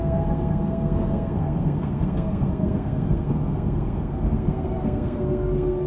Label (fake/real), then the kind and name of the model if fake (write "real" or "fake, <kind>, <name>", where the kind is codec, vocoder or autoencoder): fake, codec, SNAC